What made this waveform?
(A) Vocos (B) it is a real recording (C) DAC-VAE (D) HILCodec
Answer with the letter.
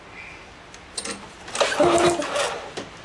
B